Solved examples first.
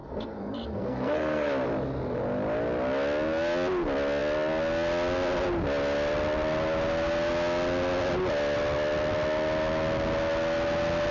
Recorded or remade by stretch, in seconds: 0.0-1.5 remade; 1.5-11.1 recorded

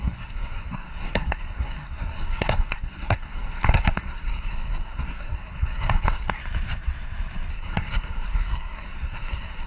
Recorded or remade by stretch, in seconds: 0.0-6.4 remade; 6.4-7.5 recorded; 7.5-9.7 remade